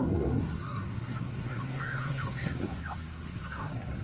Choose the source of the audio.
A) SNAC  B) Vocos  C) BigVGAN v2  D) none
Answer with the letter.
A